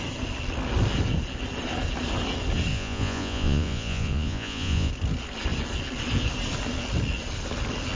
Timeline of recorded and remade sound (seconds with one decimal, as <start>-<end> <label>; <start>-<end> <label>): 0.0-2.7 recorded; 2.7-4.9 remade; 4.9-8.0 recorded